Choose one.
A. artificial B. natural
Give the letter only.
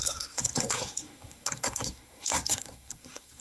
A